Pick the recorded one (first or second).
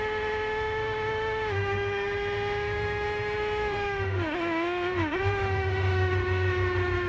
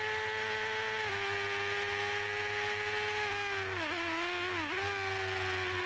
second